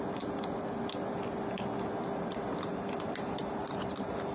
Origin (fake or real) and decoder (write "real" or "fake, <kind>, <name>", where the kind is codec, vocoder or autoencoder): real